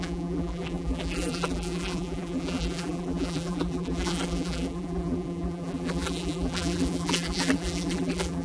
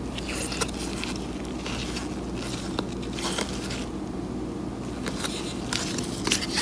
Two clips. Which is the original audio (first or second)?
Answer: second